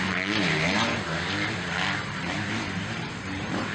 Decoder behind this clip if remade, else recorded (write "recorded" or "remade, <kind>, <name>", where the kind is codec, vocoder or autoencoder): remade, vocoder, BigVGAN v2